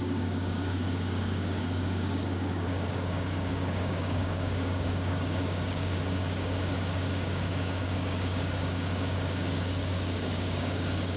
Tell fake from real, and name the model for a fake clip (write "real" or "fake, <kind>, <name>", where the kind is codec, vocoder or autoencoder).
fake, codec, DAC